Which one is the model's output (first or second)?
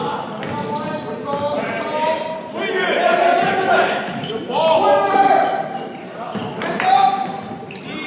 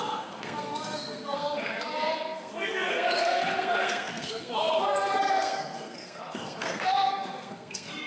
second